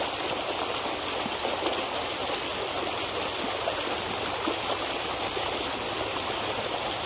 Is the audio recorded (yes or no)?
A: yes